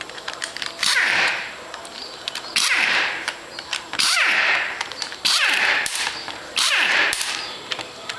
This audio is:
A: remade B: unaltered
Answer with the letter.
A